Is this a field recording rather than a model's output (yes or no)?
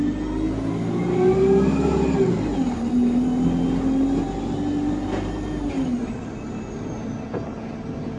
yes